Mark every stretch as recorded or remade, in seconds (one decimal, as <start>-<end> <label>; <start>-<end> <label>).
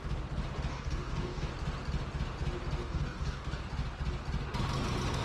0.0-0.7 recorded; 0.7-1.5 remade; 1.5-2.8 recorded; 2.8-3.6 remade; 3.6-5.2 recorded